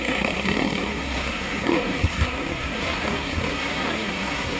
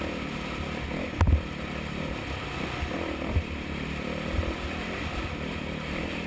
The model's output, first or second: first